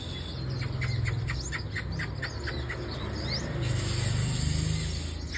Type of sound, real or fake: real